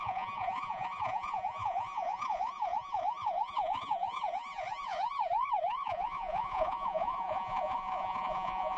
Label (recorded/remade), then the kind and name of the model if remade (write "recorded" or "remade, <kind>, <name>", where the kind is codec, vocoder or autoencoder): remade, vocoder, Vocos